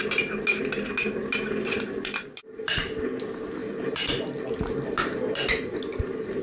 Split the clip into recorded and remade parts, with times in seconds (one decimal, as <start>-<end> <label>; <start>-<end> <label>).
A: 0.0-3.6 recorded; 3.6-5.6 remade; 5.6-6.4 recorded